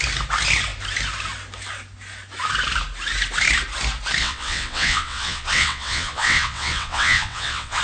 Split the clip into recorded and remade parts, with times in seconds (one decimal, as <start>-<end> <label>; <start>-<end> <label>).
0.0-4.2 recorded; 4.2-7.8 remade